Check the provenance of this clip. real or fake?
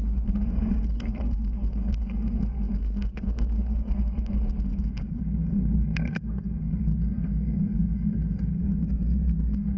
fake